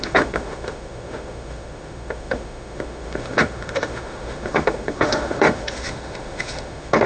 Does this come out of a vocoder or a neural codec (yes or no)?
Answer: yes